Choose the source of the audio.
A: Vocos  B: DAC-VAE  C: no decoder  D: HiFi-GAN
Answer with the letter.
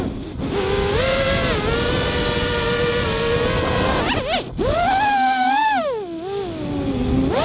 C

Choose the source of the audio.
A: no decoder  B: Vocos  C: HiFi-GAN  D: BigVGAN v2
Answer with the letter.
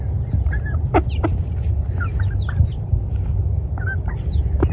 A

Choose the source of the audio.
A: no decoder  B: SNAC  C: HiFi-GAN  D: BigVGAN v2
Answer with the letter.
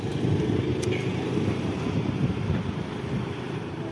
D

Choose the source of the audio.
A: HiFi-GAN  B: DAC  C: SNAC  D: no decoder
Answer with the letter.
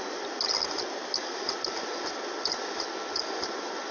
D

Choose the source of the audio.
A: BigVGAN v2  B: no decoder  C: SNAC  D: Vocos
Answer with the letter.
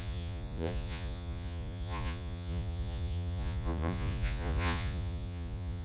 D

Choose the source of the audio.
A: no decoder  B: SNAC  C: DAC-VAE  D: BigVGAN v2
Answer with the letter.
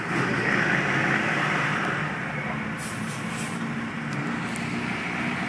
A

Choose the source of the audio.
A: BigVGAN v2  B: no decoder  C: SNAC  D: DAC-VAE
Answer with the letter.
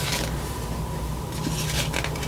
B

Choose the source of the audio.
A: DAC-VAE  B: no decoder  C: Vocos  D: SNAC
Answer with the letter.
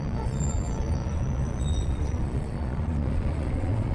C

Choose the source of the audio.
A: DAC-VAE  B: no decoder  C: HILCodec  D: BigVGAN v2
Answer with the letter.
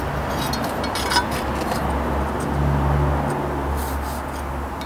B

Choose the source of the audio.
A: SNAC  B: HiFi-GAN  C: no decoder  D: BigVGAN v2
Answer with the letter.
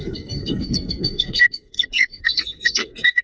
A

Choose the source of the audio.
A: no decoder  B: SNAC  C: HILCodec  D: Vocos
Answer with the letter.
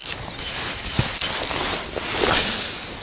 A